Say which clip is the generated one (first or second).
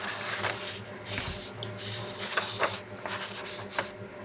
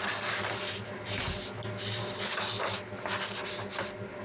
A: first